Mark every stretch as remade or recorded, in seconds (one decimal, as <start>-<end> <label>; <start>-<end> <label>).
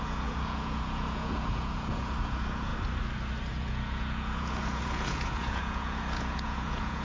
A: 0.0-2.7 remade; 2.7-3.5 recorded; 3.5-7.0 remade